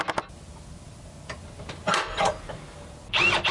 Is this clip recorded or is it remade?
recorded